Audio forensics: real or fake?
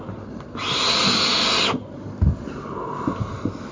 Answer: real